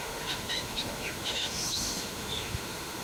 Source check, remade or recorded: remade